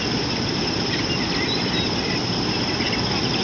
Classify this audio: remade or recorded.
recorded